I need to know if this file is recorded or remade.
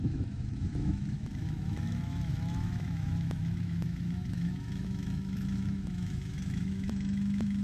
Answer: remade